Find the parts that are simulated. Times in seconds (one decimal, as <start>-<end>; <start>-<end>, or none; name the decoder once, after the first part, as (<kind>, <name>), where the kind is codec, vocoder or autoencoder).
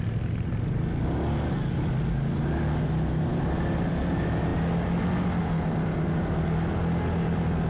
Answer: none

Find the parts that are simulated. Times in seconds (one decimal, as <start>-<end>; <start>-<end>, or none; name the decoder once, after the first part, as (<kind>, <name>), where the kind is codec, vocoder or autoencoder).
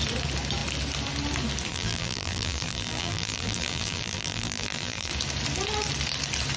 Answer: 1.7-5.1 (vocoder, BigVGAN v2)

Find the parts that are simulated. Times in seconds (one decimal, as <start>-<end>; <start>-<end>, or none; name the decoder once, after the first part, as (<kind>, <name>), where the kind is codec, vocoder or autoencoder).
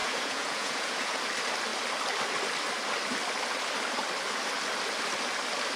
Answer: 0.0-1.2 (vocoder, Vocos)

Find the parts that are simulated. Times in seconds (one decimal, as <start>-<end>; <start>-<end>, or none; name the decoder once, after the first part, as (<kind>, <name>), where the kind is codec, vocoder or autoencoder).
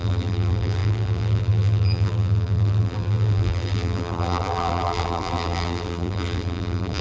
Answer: 0.0-7.0 (vocoder, BigVGAN v2)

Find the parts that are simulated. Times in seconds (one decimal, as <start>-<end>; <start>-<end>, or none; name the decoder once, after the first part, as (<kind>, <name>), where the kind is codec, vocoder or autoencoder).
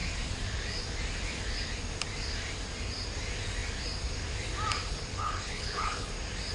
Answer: 5.1-6.1 (codec, HILCodec)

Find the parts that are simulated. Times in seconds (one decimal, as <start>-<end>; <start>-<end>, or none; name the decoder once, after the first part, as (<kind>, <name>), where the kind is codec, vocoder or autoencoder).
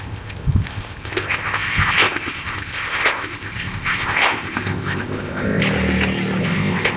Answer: 0.0-5.6 (codec, ZipCodec); 6.4-7.0